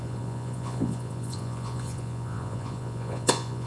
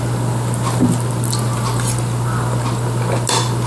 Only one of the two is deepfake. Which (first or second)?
first